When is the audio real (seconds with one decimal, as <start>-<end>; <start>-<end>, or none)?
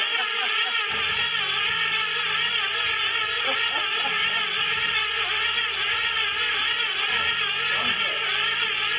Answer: 0.0-9.0